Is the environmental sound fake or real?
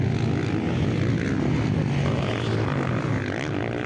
real